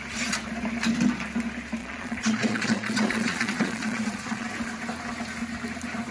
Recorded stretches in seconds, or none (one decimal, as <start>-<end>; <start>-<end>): 0.0-1.8; 4.5-6.1